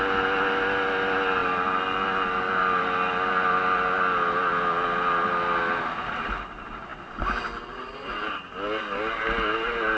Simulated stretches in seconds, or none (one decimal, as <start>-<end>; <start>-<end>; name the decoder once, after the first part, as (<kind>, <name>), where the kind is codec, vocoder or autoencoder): none